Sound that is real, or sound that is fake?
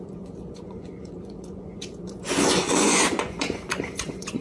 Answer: fake